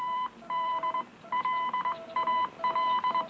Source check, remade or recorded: recorded